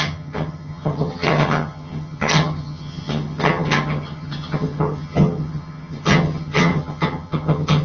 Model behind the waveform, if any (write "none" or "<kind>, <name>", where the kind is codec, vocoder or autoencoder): vocoder, HiFi-GAN